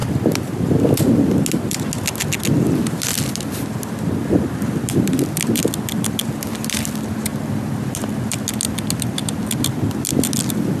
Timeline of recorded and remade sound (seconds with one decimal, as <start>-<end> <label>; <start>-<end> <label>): 0.0-10.8 recorded